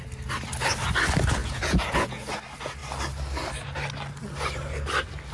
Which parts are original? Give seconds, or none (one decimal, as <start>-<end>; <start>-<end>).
0.0-1.4; 2.3-5.3